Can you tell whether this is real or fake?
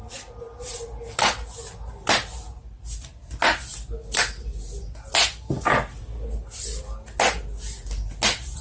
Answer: real